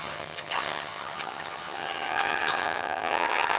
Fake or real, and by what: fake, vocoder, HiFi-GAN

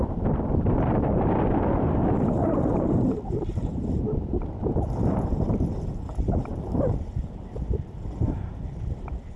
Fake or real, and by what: fake, vocoder, BigVGAN v2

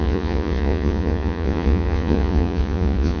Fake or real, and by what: fake, vocoder, Vocos